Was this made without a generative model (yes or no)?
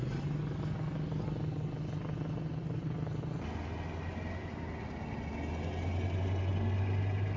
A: yes